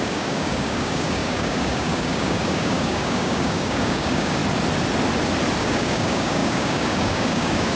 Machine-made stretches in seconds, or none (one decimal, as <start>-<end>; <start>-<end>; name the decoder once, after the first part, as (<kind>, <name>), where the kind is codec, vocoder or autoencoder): 0.0-4.4 (codec, DAC); 5.6-7.8